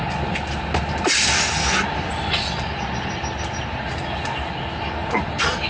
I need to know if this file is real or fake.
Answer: real